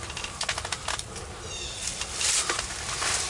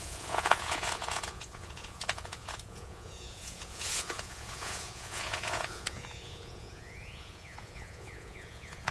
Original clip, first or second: first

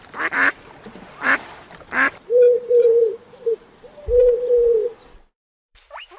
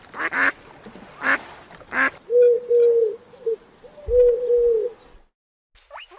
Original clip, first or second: second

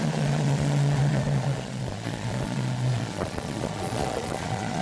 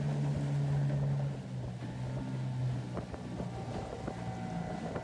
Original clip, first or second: second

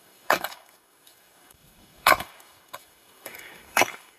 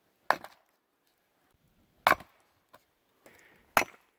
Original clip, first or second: second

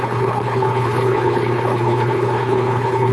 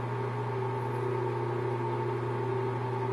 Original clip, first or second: second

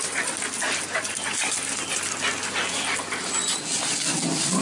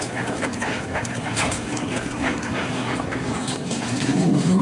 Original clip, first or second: first